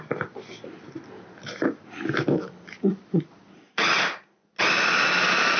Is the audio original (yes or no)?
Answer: yes